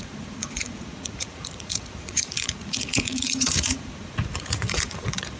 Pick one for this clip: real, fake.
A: fake